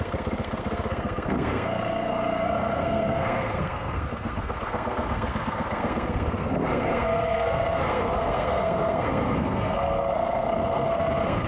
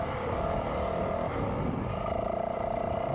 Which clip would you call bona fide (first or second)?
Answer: second